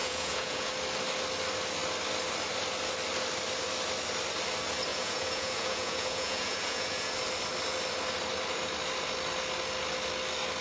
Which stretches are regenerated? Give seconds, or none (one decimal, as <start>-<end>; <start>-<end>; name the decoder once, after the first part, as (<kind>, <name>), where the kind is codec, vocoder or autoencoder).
0.0-0.7 (vocoder, Vocos); 4.9-7.1